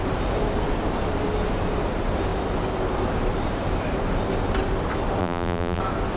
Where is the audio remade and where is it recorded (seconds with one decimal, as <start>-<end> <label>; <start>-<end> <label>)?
0.0-5.2 recorded; 5.2-5.8 remade; 5.8-6.2 recorded

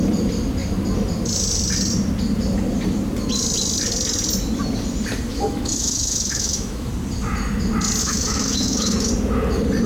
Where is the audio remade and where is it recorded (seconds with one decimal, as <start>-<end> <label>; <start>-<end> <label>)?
0.0-5.3 recorded; 5.3-6.9 remade; 6.9-8.0 recorded; 8.0-9.1 remade; 9.1-9.9 recorded

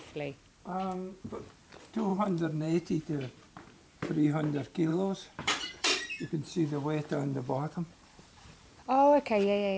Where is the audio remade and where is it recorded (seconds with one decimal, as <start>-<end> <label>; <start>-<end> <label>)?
0.0-2.1 recorded; 2.1-3.0 remade; 3.0-4.9 recorded; 4.9-8.8 remade; 8.8-9.8 recorded

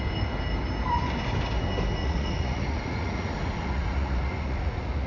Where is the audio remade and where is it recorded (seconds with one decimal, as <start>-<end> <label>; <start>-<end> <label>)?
0.0-2.0 recorded; 2.0-5.1 remade